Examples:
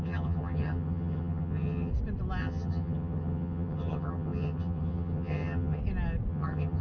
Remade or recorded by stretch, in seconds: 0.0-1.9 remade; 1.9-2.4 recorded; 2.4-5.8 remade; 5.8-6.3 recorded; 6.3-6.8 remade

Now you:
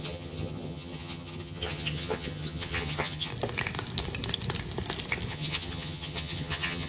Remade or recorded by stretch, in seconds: 0.0-3.3 remade; 3.3-5.3 recorded; 5.3-6.9 remade

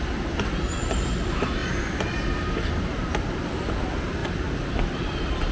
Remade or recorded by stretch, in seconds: 0.0-5.5 recorded